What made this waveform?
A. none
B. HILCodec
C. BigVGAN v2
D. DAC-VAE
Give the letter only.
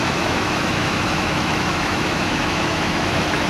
D